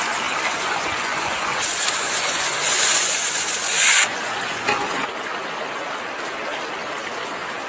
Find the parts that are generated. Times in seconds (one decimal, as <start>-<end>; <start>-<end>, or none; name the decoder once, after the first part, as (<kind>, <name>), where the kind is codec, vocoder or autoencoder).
0.5-5.1 (vocoder, Vocos)